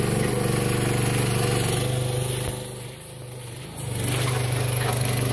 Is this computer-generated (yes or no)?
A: no